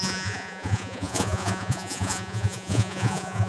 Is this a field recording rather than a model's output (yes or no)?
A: no